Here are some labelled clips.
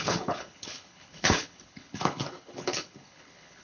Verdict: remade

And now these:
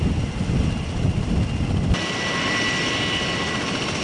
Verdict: recorded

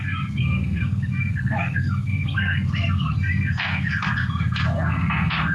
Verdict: remade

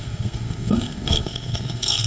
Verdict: remade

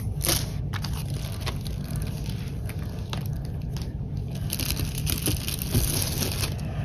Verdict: recorded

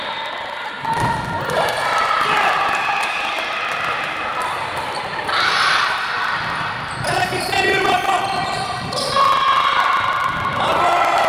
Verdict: recorded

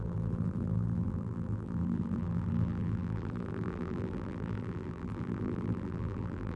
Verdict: remade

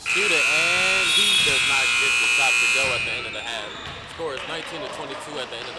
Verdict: recorded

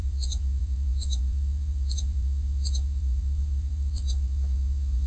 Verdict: remade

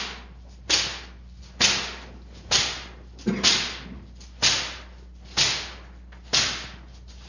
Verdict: recorded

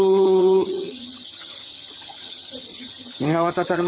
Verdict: remade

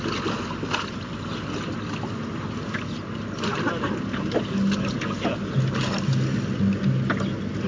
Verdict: recorded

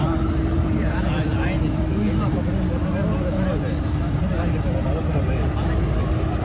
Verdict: recorded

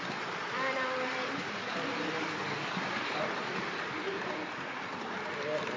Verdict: remade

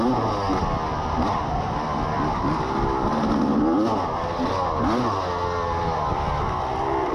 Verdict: recorded